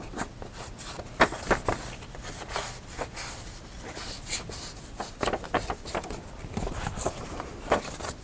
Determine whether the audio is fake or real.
real